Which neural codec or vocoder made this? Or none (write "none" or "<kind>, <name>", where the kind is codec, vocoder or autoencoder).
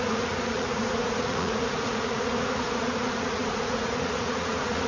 vocoder, Vocos